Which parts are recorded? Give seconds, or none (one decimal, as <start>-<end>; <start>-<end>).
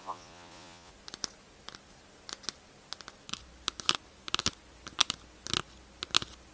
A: 0.9-6.5